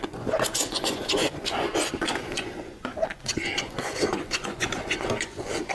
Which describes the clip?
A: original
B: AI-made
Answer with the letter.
B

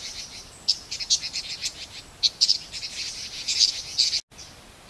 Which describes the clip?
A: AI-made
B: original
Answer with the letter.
B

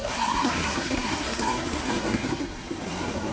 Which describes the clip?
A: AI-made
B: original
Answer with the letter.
A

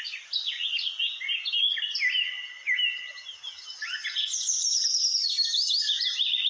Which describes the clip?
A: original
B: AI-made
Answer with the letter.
A